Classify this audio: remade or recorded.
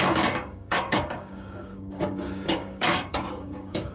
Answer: remade